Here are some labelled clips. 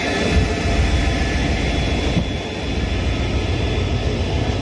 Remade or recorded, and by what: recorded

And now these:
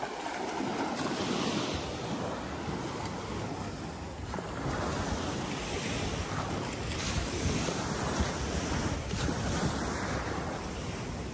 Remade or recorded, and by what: recorded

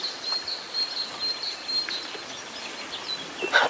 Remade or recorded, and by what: recorded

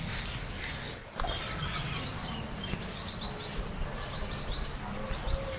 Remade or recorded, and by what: recorded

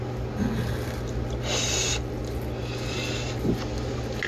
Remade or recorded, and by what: recorded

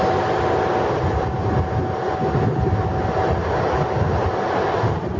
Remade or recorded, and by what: recorded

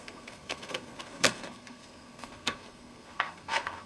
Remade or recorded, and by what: remade, codec, SNAC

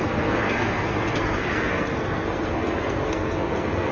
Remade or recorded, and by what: remade, codec, SNAC